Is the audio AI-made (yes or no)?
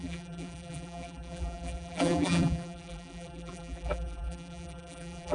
yes